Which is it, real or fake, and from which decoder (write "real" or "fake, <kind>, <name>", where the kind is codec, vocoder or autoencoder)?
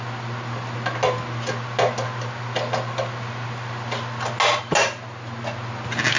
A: real